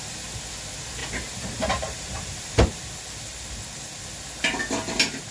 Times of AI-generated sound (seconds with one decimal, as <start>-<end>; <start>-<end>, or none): 1.0-2.9